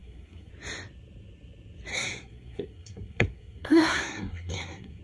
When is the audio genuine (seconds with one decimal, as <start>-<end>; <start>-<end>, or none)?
0.5-1.9